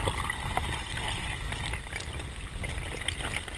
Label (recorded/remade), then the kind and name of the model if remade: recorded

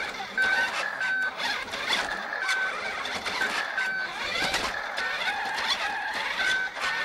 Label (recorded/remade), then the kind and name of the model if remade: recorded